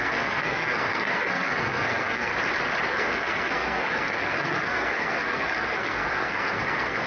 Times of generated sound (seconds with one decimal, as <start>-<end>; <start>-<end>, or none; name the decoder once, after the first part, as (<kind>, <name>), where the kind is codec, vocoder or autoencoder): 0.0-2.3 (codec, SNAC); 2.9-7.1